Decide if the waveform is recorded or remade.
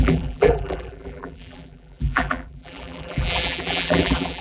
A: remade